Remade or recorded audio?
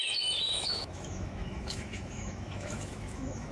remade